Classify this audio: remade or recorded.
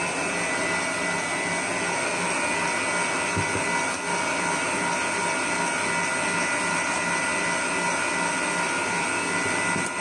recorded